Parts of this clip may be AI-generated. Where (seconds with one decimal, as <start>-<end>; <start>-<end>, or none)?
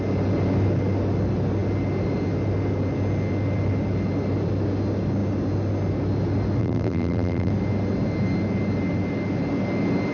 6.6-7.5